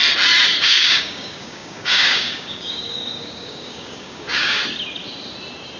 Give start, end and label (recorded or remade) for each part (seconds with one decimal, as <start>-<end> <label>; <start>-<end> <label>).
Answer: 0.0-0.6 recorded; 0.6-4.6 remade; 4.6-5.8 recorded

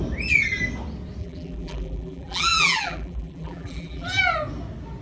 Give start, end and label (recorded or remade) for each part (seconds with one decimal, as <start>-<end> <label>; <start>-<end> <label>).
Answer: 0.0-1.2 recorded; 1.2-4.2 remade; 4.2-5.0 recorded

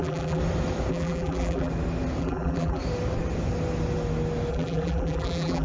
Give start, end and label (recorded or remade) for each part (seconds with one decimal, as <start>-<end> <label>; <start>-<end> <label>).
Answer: 0.0-0.4 remade; 0.4-0.9 recorded; 0.9-1.7 remade; 1.7-2.2 recorded; 2.2-2.8 remade; 2.8-4.5 recorded; 4.5-5.6 remade